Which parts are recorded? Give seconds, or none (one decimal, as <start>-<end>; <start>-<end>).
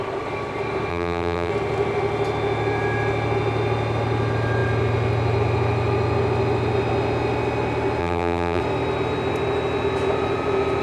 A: 0.0-0.9; 1.5-8.0; 8.6-10.8